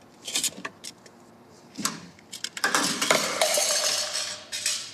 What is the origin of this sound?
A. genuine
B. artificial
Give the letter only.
B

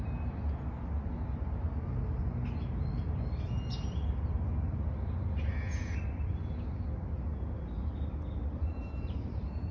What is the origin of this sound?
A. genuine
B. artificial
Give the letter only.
A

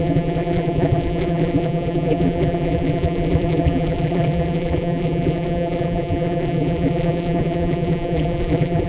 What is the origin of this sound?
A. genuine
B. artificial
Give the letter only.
B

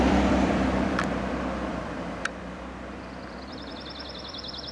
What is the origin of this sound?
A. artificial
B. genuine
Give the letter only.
A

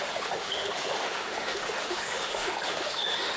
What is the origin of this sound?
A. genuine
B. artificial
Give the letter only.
B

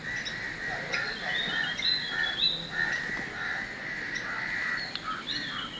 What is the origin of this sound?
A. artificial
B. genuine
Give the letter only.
B